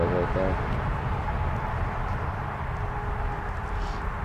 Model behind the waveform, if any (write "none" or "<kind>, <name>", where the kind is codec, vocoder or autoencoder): vocoder, BigVGAN v2